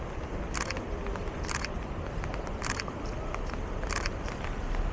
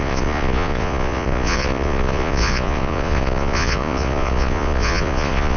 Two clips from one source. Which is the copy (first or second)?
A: second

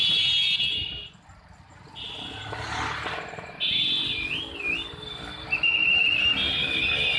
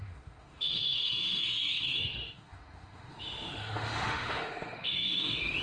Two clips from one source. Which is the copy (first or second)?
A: second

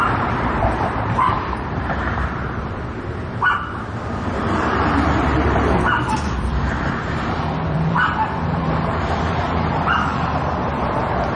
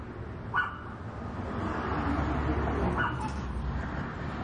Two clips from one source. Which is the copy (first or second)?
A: first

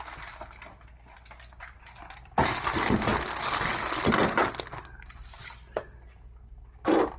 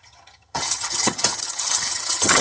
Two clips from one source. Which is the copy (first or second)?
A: second